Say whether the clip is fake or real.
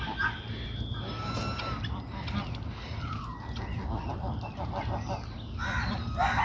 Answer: real